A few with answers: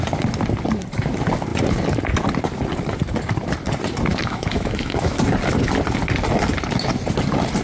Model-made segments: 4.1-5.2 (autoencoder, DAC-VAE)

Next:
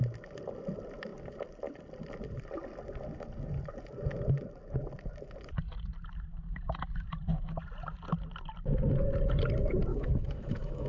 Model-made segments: 9.9-10.9 (autoencoder, DAC-VAE)